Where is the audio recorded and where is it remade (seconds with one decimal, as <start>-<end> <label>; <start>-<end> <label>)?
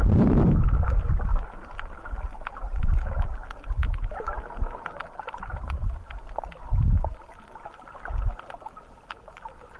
0.0-9.8 recorded